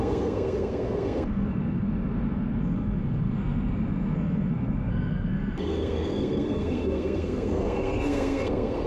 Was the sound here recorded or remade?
remade